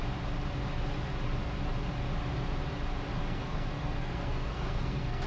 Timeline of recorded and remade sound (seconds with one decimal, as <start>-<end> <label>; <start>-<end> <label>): 0.0-3.2 recorded; 3.2-5.3 remade